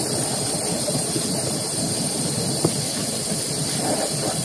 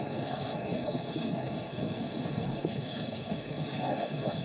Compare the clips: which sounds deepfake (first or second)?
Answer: second